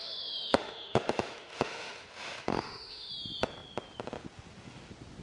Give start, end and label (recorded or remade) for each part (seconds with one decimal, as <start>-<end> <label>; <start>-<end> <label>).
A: 0.0-3.1 remade; 3.1-5.2 recorded